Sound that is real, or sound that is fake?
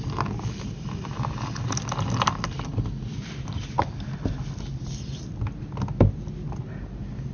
real